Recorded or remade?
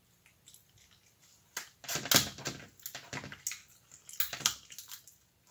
recorded